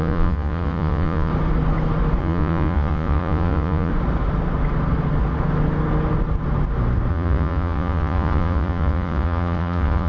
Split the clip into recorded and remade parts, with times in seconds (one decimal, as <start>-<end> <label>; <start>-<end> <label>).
0.0-1.3 remade; 1.3-2.2 recorded; 2.2-3.9 remade; 3.9-7.1 recorded; 7.1-10.1 remade